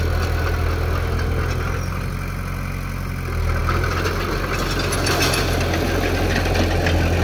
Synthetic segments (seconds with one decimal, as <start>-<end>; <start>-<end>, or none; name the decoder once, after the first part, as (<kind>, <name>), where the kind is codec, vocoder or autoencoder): none